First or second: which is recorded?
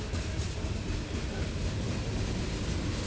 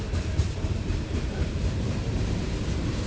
first